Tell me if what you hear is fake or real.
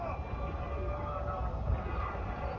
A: real